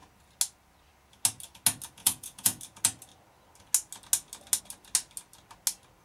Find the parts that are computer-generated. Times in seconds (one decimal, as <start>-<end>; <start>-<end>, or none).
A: 2.0-2.6